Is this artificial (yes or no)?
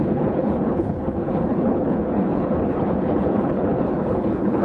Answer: yes